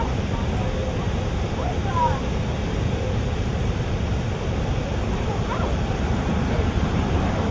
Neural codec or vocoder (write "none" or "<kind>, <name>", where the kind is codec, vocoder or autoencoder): none